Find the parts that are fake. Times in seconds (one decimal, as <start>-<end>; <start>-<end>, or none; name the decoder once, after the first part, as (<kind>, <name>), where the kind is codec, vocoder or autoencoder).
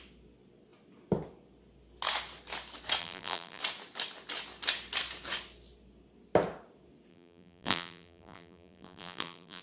3.0-3.6 (vocoder, BigVGAN v2); 7.1-9.6